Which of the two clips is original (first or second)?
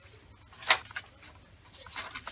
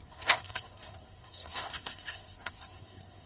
first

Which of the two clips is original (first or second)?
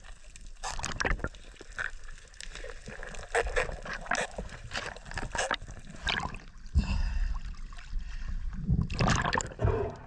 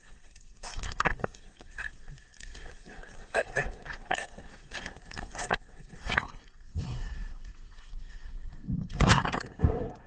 first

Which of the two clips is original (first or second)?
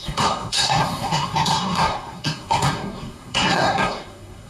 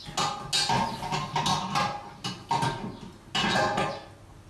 second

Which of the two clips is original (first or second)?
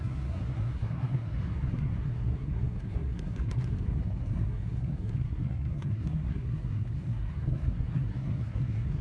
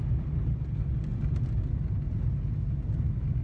second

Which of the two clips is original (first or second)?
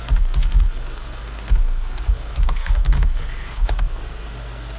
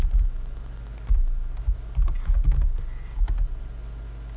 second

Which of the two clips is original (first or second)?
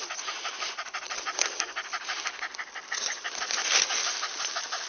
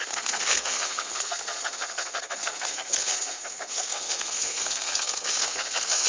first